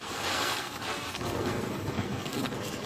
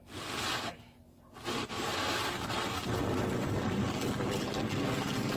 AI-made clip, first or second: first